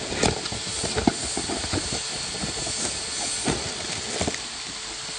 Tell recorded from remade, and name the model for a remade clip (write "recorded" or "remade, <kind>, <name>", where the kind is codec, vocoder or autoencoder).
recorded